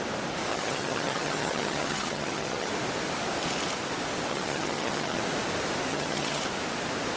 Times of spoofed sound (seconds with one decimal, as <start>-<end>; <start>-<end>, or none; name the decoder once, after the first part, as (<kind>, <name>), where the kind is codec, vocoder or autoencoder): 0.5-2.7 (vocoder, HiFi-GAN); 4.3-5.2; 5.9-6.4